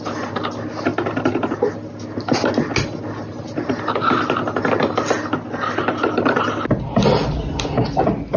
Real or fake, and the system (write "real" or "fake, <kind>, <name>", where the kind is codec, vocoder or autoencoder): real